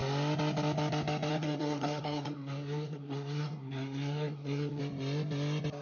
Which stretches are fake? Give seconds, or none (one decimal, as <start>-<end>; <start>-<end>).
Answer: 1.3-4.8